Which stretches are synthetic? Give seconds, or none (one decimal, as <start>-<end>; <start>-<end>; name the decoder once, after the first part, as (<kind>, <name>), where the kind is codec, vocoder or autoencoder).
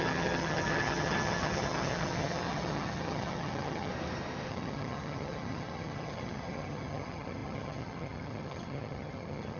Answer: 0.0-3.9 (vocoder, HiFi-GAN); 4.5-9.6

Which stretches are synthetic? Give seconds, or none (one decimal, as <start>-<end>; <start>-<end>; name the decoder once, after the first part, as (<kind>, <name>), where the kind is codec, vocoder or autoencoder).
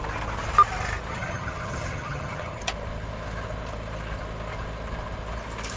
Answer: 1.1-2.6 (vocoder, HiFi-GAN)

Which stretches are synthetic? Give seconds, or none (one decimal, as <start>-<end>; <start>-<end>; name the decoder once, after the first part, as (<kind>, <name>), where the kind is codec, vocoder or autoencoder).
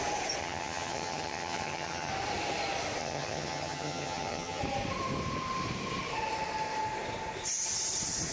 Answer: 0.4-2.1 (vocoder, HiFi-GAN); 3.0-4.6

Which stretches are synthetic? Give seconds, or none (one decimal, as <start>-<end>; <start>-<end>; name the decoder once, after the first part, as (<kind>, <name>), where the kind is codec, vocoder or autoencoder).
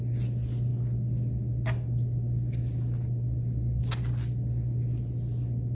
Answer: none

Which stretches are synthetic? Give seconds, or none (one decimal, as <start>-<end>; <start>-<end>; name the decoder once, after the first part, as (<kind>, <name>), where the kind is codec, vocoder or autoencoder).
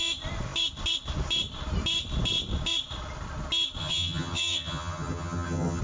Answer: 3.8-5.8 (vocoder, HiFi-GAN)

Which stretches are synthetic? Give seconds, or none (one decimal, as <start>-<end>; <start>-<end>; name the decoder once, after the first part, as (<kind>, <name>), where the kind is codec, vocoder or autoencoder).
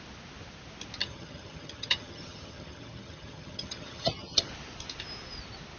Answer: 1.0-4.5 (vocoder, HiFi-GAN)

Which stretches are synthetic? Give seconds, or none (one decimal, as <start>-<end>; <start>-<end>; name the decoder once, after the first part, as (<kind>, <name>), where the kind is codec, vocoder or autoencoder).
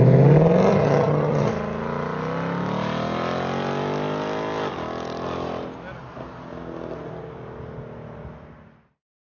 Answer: 0.7-1.5 (vocoder, HiFi-GAN)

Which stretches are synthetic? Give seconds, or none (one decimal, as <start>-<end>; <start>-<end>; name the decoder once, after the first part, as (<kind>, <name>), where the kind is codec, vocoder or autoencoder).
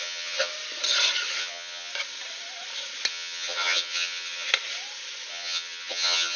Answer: 0.0-0.5 (vocoder, HiFi-GAN); 1.4-1.9; 3.1-4.5; 5.3-6.4